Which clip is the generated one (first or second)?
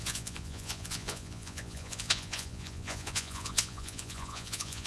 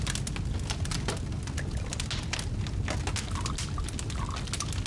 first